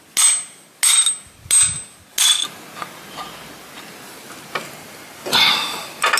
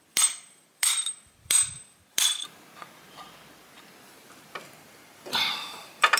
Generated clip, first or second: second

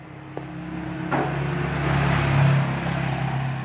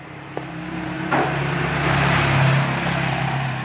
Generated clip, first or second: second